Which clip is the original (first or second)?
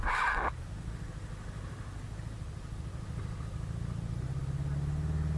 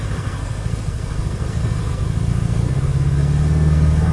first